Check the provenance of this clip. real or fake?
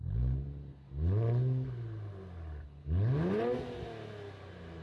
real